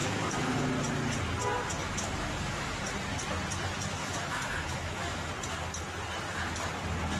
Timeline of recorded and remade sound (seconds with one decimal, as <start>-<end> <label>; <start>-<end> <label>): 0.0-0.6 remade; 0.6-1.8 recorded; 1.8-2.8 remade; 2.8-4.0 recorded; 4.0-5.3 remade; 5.3-7.2 recorded